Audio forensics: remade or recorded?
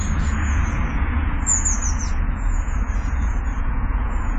remade